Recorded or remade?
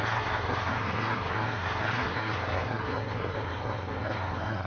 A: remade